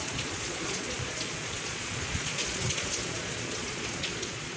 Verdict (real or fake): fake